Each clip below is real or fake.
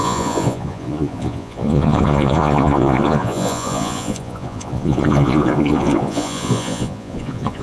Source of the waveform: fake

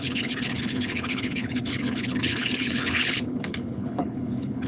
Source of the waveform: fake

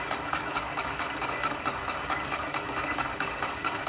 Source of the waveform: fake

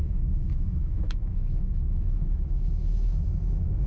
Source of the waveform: fake